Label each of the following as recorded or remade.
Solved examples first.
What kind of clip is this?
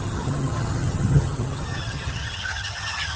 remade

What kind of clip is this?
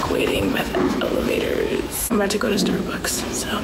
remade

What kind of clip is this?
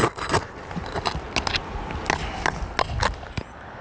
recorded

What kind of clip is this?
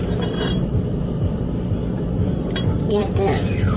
remade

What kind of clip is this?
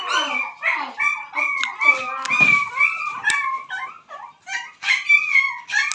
recorded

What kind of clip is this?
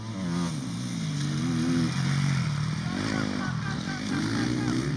recorded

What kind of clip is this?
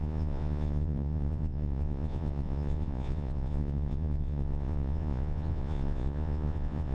remade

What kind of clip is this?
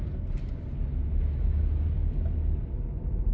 recorded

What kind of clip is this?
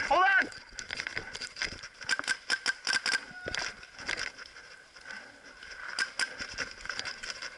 recorded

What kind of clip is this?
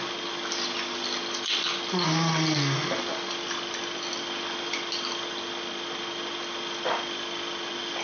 recorded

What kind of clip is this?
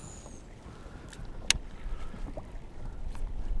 recorded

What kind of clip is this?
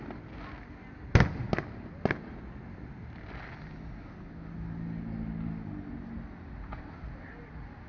recorded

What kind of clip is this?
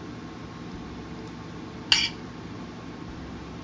recorded